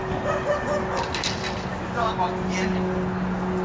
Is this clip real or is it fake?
real